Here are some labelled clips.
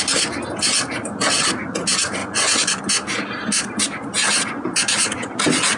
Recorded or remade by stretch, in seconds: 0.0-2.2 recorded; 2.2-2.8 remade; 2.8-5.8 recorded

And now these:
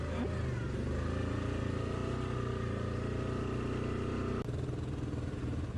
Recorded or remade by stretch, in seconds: 0.0-5.8 recorded

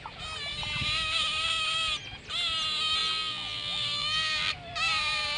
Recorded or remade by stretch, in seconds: 0.0-3.0 recorded; 3.0-4.5 remade; 4.5-5.4 recorded

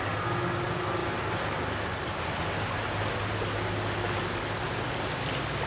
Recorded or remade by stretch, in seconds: 0.0-5.7 recorded

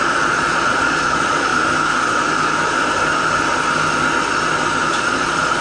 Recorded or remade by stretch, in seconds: 0.0-1.5 remade; 1.5-4.9 recorded; 4.9-5.6 remade

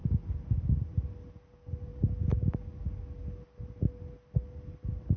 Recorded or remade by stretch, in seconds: 0.0-5.2 recorded

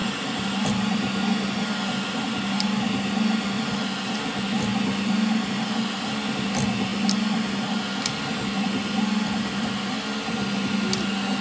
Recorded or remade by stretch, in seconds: 0.0-1.2 remade; 1.2-11.4 recorded

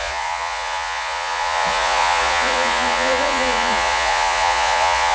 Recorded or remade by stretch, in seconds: 0.0-5.1 remade